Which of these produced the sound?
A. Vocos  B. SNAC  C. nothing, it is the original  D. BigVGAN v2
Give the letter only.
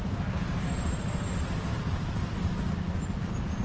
C